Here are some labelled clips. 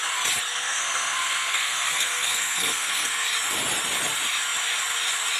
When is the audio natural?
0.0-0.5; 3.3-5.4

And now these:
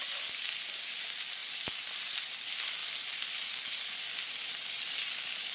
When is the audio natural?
0.0-5.5

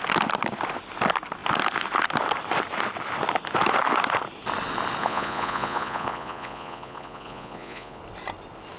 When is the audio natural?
0.0-5.0; 8.0-8.8

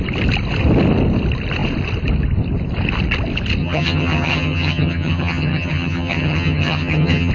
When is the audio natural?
0.0-3.6

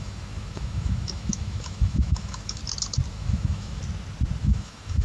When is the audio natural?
2.6-3.1; 3.8-4.4

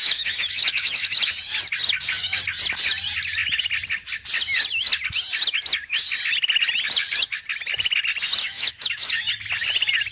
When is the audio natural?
1.3-8.4; 9.1-10.1

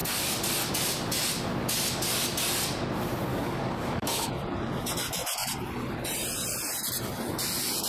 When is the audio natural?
0.0-3.3; 4.3-7.9